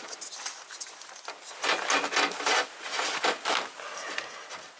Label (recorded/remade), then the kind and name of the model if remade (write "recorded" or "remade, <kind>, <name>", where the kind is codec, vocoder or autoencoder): recorded